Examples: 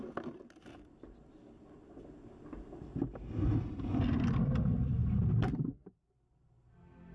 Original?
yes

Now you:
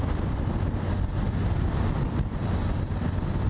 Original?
yes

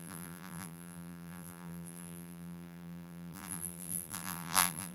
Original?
no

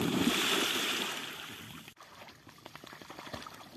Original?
yes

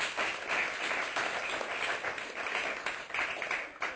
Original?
yes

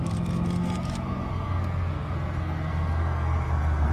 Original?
no